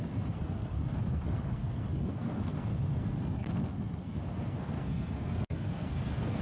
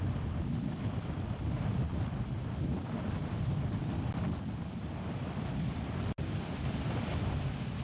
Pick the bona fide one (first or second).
second